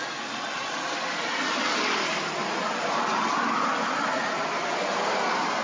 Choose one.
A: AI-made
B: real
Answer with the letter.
B